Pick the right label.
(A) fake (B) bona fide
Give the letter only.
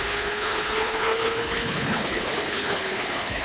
A